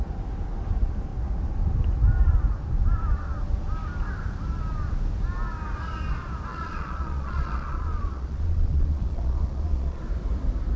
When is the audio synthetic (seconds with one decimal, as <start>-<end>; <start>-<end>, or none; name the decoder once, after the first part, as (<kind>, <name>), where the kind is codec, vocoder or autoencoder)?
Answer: 6.5-10.0 (vocoder, Vocos)